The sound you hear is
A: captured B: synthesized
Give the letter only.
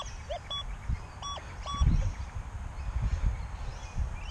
A